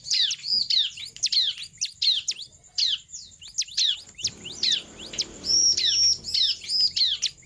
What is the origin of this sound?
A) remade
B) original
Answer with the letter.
B